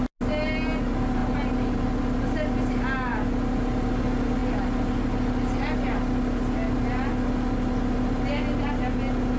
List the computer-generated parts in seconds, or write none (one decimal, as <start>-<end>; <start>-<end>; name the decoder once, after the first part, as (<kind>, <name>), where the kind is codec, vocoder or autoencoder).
none